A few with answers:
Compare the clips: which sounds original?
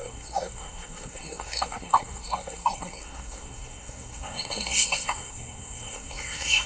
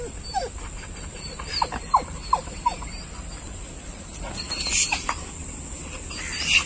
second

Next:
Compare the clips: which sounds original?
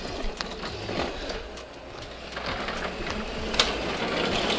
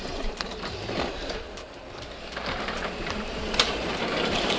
first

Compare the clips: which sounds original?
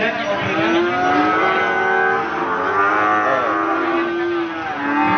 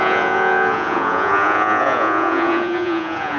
first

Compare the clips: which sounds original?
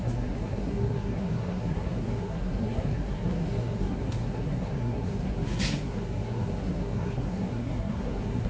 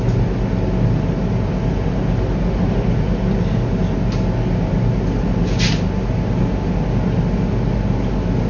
second